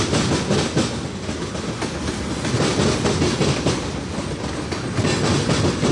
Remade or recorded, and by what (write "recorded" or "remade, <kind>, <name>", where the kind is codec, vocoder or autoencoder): recorded